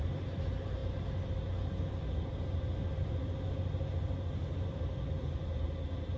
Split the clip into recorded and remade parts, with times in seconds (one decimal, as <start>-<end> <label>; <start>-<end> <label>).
0.0-6.2 recorded